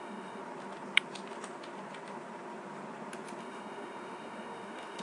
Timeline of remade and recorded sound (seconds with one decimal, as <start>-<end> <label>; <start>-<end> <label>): 0.0-0.4 remade; 0.4-3.4 recorded; 3.4-5.0 remade